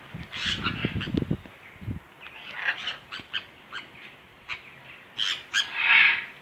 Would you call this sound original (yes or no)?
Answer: yes